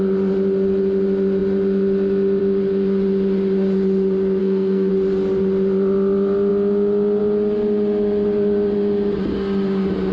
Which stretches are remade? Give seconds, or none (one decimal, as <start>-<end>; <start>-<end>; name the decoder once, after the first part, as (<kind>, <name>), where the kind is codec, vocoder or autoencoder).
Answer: 4.4-4.9 (codec, SNAC)